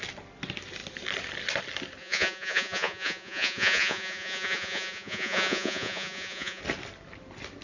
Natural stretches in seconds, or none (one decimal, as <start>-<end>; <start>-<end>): 0.0-2.0; 6.6-7.6